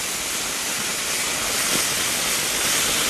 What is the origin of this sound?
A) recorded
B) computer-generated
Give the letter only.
A